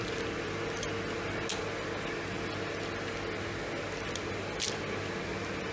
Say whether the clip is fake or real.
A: real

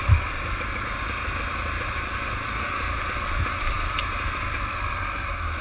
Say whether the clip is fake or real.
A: real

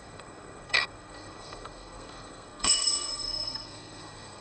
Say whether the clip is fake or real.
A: fake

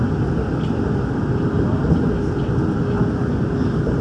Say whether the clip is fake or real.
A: real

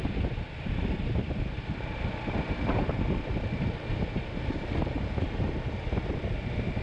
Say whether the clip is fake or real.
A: real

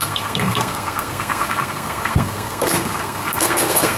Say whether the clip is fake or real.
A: fake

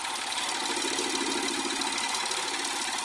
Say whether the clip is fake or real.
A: real